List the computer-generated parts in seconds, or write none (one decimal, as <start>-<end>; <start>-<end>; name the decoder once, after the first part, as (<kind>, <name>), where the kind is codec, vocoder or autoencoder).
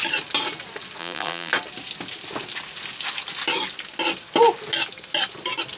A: 1.0-1.5 (vocoder, BigVGAN v2)